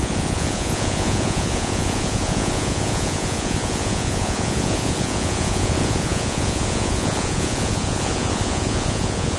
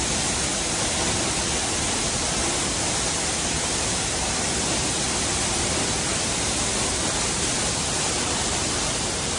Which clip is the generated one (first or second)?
first